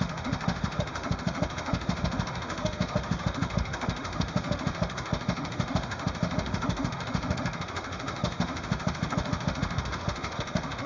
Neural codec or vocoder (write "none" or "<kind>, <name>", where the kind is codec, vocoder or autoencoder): autoencoder, DAC-VAE